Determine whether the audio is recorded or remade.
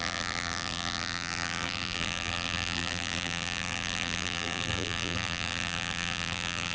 remade